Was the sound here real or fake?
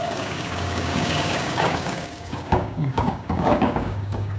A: fake